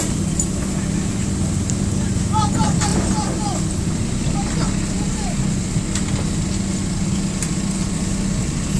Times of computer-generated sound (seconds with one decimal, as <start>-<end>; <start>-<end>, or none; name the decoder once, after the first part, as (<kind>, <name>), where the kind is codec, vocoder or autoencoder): none